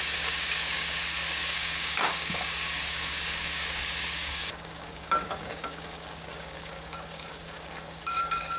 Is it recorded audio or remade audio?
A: remade